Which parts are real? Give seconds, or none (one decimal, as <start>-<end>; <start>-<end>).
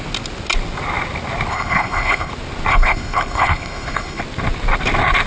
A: 0.0-1.5; 2.3-2.7; 4.2-5.3